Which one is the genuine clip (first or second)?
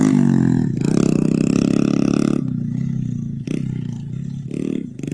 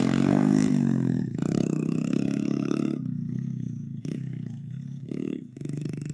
first